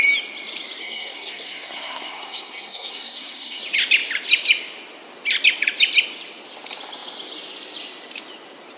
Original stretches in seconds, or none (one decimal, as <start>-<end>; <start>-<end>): 0.0-0.8; 3.6-8.8